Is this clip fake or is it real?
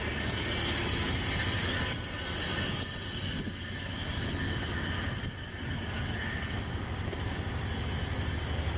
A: real